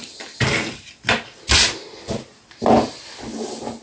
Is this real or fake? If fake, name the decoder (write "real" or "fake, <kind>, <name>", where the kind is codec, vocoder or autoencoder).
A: real